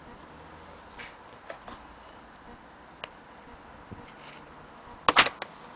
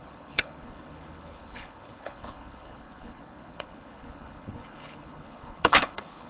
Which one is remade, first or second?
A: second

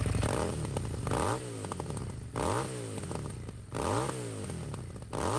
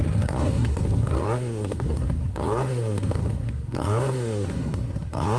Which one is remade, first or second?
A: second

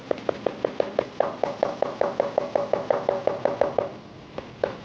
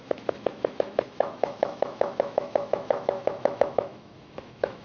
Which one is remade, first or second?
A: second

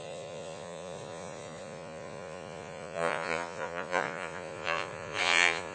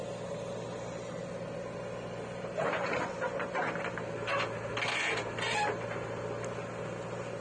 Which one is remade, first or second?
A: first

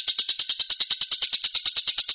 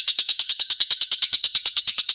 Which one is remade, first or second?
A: second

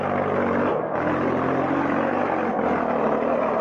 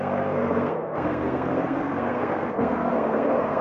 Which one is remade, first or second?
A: second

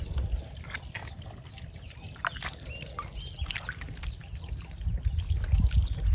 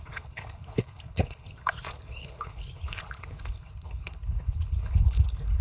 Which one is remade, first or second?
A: second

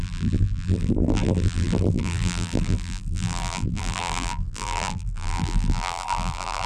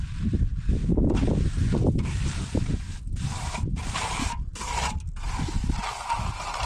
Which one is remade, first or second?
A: first